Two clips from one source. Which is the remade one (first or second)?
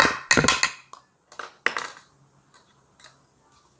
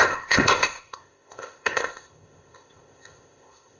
second